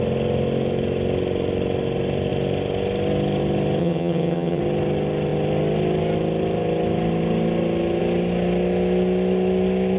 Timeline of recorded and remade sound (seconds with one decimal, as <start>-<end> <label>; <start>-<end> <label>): 0.0-3.8 recorded; 3.8-4.6 remade; 4.6-10.0 recorded